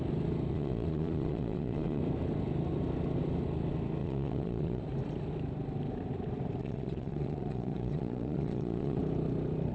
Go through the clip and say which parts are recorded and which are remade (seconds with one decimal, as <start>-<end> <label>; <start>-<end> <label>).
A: 0.0-0.5 recorded; 0.5-2.0 remade; 2.0-4.0 recorded; 4.0-4.8 remade; 4.8-6.6 recorded; 6.6-9.0 remade; 9.0-9.7 recorded